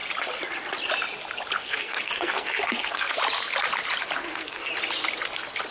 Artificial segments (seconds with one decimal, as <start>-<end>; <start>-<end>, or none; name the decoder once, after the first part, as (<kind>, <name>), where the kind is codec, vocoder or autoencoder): 1.6-3.2 (codec, SNAC); 4.2-4.7